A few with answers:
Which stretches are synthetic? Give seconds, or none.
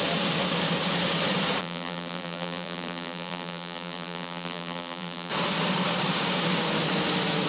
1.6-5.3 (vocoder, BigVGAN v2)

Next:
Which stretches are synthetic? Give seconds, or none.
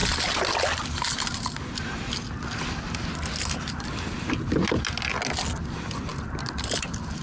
6.1-7.2 (vocoder, BigVGAN v2)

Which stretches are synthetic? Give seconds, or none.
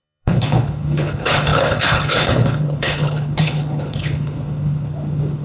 0.0-5.4 (codec, HILCodec)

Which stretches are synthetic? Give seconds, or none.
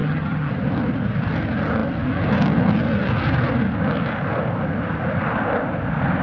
0.0-0.5 (vocoder, HiFi-GAN)